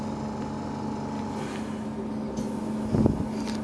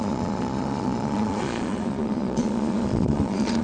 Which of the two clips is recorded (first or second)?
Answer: first